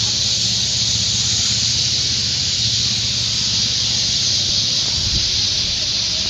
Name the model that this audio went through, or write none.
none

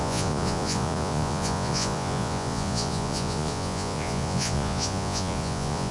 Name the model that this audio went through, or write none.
vocoder, Vocos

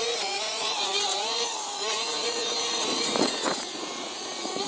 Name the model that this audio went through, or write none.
vocoder, Vocos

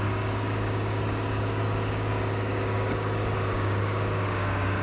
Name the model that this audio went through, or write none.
codec, DAC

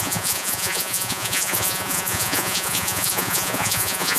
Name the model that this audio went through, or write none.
vocoder, Vocos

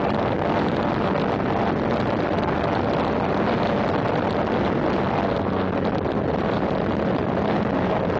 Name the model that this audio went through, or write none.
none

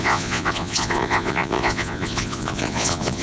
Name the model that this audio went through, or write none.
vocoder, Vocos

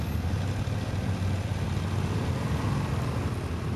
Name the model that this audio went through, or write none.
none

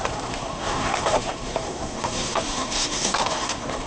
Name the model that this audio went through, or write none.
codec, SNAC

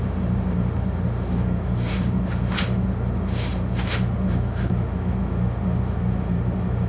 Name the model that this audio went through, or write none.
autoencoder, DAC-VAE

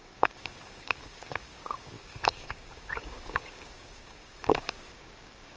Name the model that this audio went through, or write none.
codec, DAC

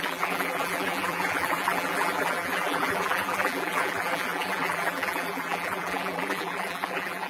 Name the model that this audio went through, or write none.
vocoder, BigVGAN v2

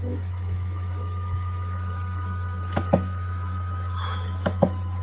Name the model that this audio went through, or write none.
autoencoder, DAC-VAE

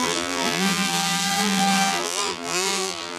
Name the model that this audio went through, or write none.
vocoder, BigVGAN v2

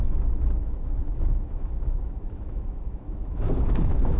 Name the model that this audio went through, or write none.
autoencoder, DAC-VAE